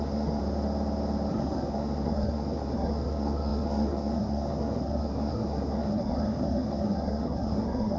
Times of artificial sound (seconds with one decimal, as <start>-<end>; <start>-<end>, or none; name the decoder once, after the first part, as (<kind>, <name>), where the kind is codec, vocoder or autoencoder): 0.0-0.4 (codec, SNAC); 1.3-8.0